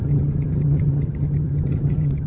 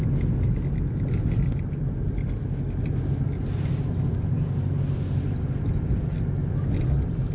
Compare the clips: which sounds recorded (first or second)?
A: second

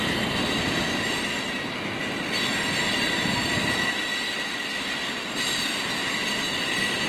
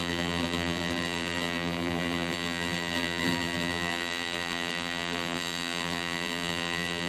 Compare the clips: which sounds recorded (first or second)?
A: first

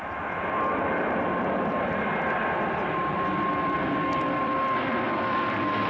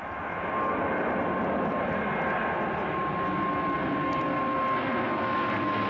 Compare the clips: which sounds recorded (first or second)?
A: second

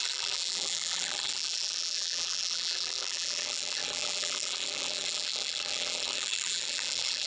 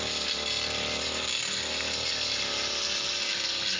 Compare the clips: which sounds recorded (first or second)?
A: second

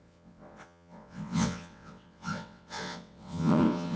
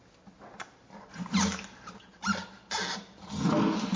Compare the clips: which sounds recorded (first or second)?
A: second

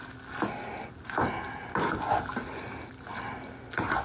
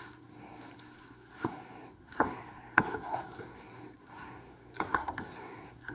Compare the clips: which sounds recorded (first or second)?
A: first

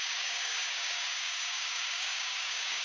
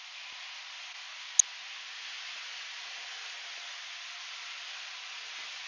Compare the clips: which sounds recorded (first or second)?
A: second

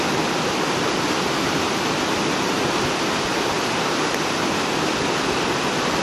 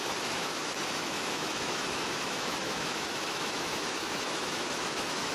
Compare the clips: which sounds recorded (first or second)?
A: first